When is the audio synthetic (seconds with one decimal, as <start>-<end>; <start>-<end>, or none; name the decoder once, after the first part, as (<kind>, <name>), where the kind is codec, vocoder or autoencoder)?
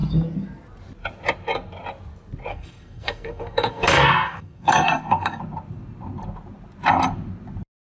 2.5-5.4 (codec, SNAC)